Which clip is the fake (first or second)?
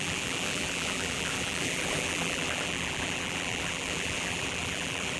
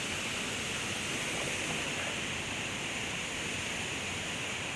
first